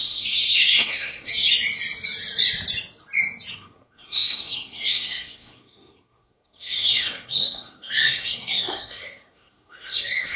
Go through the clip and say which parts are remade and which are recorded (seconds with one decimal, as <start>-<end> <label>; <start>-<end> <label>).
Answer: 0.0-1.3 remade; 1.3-3.5 recorded; 3.5-10.4 remade